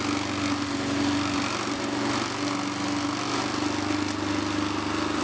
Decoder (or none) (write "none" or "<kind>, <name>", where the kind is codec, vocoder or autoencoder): none